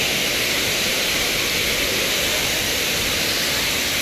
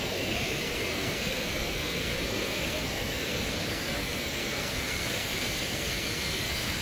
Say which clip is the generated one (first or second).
second